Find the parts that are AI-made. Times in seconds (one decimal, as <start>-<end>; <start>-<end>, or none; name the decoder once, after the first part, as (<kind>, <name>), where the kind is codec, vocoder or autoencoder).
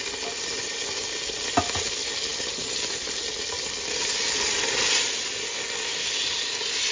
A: none